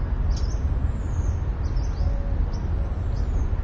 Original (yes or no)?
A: yes